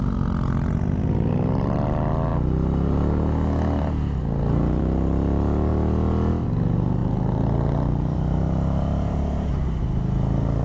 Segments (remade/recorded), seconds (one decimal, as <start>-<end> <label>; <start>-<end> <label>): 0.0-7.0 recorded; 7.0-9.8 remade; 9.8-10.6 recorded